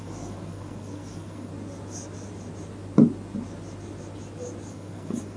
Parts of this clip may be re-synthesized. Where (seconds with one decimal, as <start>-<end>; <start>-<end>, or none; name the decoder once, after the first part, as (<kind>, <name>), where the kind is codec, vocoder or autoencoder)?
0.0-1.5 (codec, SNAC); 4.7-5.4